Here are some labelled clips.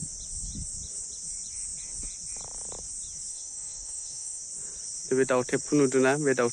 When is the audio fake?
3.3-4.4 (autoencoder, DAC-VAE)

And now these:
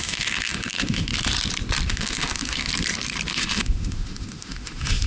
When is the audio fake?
0.0-1.1 (autoencoder, DAC-VAE); 1.9-2.7; 3.3-5.1

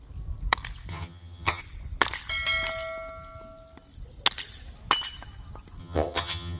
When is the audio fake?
0.9-1.6 (vocoder, HiFi-GAN); 5.8-6.6

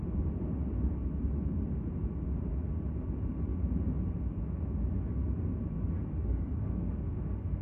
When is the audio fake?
6.2-6.9 (codec, SNAC)

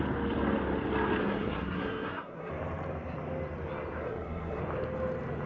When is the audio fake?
1.2-2.5 (codec, SNAC); 4.0-4.6

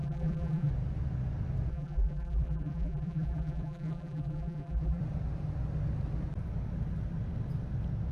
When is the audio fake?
0.0-0.7 (vocoder, BigVGAN v2); 1.7-5.0